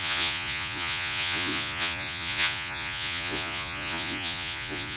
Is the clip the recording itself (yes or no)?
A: no